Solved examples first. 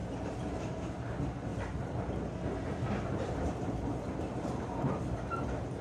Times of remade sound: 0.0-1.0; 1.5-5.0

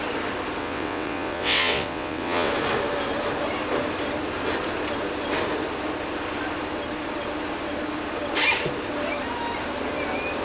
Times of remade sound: 0.6-2.5

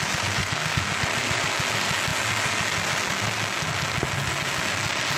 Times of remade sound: 0.4-1.0